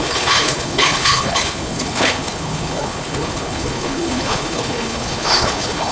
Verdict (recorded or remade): remade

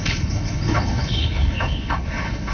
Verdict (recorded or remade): remade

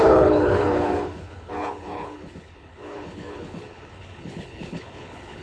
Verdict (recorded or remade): remade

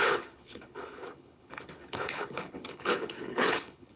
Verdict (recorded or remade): remade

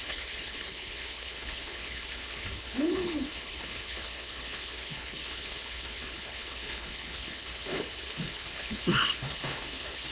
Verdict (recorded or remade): remade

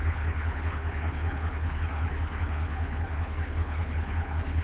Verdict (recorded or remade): remade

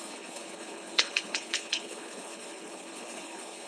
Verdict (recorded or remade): remade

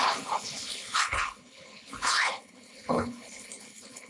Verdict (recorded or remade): remade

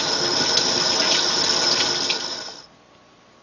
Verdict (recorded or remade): recorded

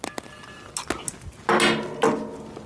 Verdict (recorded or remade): recorded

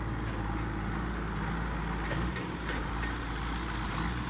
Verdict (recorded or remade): recorded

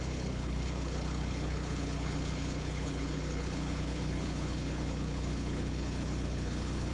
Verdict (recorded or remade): remade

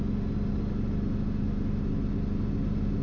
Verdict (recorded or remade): recorded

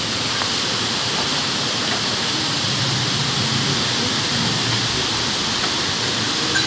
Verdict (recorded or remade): recorded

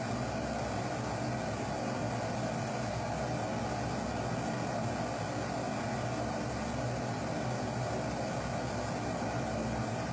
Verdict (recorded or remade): recorded